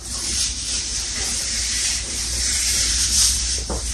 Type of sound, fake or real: fake